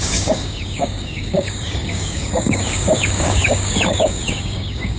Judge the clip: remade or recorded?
remade